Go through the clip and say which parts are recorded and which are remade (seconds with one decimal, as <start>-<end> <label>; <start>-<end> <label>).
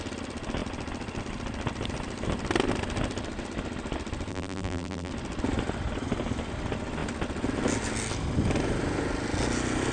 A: 0.0-4.3 recorded; 4.3-5.1 remade; 5.1-9.9 recorded